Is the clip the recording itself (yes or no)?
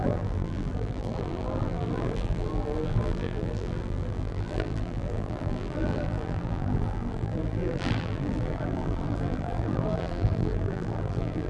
no